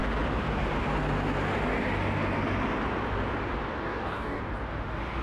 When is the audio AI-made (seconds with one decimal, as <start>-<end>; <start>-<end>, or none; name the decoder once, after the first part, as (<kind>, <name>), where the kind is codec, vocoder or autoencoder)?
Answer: 3.8-4.4 (codec, DAC)